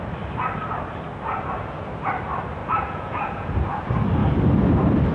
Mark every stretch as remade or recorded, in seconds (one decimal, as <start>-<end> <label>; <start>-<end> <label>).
0.0-2.6 recorded; 2.6-3.8 remade; 3.8-5.1 recorded